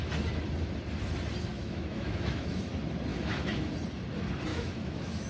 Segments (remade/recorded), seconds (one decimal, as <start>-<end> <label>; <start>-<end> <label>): 0.0-1.5 recorded; 1.5-2.7 remade; 2.7-3.1 recorded; 3.1-3.7 remade; 3.7-4.5 recorded; 4.5-5.3 remade